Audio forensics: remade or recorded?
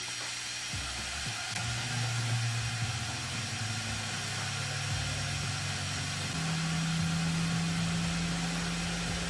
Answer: recorded